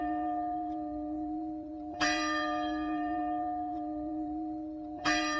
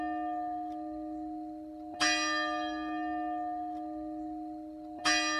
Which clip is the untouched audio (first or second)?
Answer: second